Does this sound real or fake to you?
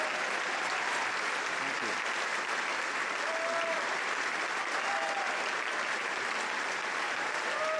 fake